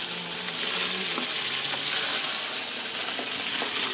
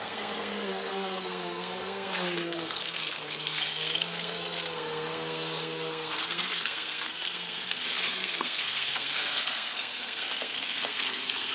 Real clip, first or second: first